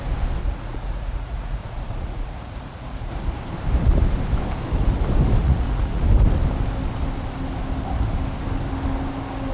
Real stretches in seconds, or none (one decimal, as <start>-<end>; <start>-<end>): 0.0-0.4; 3.1-5.4; 6.0-9.5